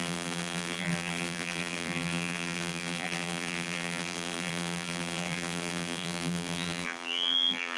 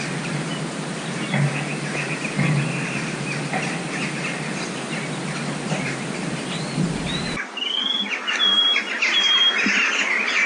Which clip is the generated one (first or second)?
first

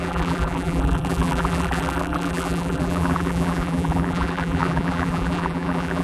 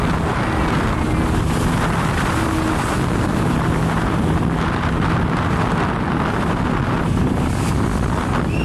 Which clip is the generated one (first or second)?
first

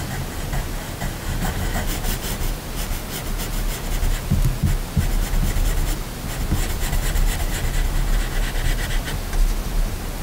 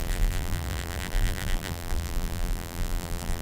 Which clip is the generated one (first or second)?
second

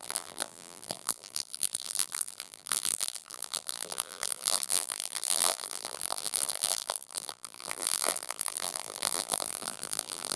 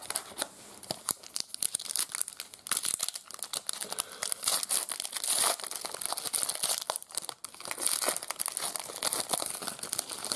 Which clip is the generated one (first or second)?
first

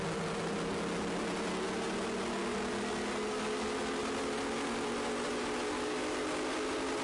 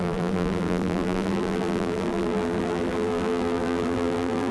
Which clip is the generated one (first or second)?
second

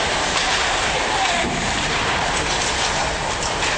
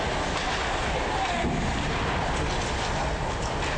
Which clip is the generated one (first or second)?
first